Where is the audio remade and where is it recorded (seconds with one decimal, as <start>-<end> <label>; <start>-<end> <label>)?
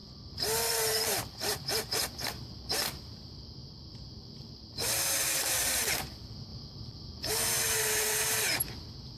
0.0-3.6 remade; 3.6-4.4 recorded; 4.4-9.2 remade